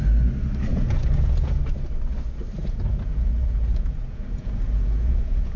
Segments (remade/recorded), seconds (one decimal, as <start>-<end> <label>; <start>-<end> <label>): 0.0-0.7 recorded; 0.7-1.6 remade; 1.6-2.6 recorded; 2.6-5.6 remade